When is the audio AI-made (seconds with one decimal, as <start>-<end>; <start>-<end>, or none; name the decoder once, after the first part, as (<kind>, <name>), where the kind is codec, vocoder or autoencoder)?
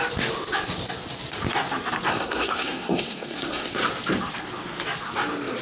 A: 2.1-3.9 (codec, SNAC)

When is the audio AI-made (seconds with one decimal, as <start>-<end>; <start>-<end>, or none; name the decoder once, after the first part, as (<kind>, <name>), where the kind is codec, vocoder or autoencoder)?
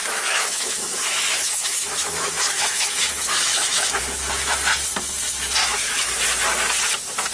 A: 0.0-4.0 (autoencoder, DAC-VAE); 5.6-6.1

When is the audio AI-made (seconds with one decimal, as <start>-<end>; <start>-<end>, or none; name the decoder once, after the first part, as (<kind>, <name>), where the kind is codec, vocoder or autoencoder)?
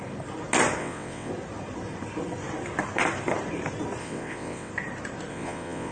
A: 0.8-1.3 (vocoder, WaveNeXt); 4.0-4.7; 5.3-5.9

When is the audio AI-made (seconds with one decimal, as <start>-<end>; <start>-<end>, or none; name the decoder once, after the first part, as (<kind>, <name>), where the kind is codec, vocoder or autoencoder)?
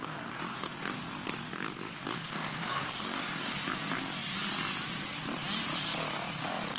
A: 0.0-1.0 (codec, DAC); 2.3-3.6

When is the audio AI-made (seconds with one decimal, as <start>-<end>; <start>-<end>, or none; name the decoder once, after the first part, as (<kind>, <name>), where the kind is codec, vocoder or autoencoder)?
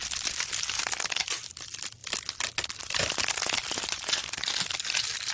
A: none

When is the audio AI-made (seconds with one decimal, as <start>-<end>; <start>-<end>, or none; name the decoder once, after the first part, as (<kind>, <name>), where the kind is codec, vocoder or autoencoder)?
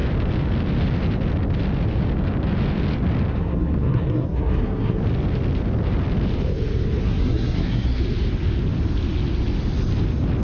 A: 3.3-5.0 (codec, SNAC); 7.0-8.0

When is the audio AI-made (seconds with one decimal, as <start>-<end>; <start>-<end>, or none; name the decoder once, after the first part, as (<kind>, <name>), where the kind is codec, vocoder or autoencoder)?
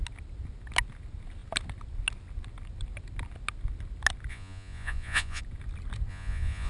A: 4.3-5.4 (vocoder, Vocos); 6.1-6.7